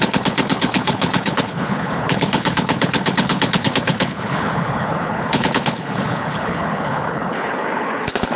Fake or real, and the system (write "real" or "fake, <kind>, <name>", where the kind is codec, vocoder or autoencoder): fake, codec, HILCodec